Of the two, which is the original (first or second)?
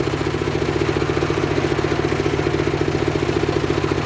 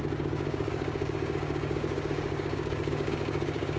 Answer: first